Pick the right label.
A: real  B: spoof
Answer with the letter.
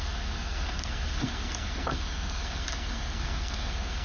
B